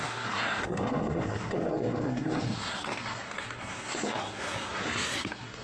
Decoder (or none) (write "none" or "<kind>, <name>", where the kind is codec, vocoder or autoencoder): codec, SNAC